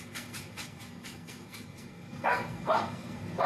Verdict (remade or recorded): remade